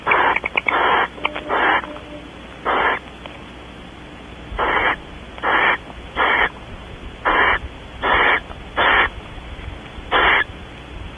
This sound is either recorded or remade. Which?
recorded